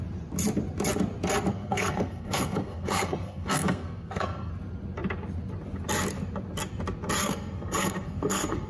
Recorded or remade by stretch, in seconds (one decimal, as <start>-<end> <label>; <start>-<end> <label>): 0.0-1.5 recorded; 1.5-4.5 remade; 4.5-7.2 recorded; 7.2-8.7 remade

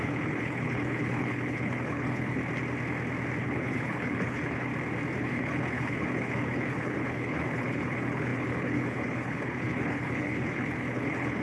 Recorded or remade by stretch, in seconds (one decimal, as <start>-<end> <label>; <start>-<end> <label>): 0.0-2.4 remade; 2.4-3.4 recorded; 3.4-4.7 remade; 4.7-5.2 recorded; 5.2-11.4 remade

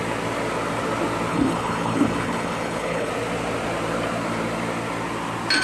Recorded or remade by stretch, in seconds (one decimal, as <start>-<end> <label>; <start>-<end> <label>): 0.0-1.3 recorded; 1.3-3.1 remade; 3.1-5.6 recorded

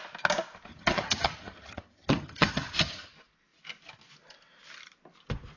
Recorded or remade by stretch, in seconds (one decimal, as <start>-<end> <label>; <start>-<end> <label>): 0.0-0.7 recorded; 0.7-3.1 remade; 3.1-5.6 recorded

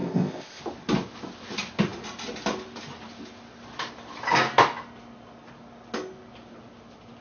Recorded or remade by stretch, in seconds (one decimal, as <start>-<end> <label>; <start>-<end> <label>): 0.0-0.6 remade; 0.6-7.2 recorded

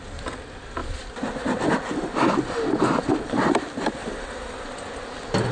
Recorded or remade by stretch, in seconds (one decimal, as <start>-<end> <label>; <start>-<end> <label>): 0.0-5.5 recorded